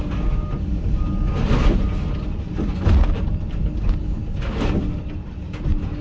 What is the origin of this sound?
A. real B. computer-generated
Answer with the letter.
A